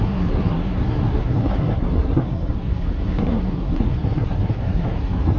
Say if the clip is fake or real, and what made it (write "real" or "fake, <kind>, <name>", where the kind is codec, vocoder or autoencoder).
fake, codec, SNAC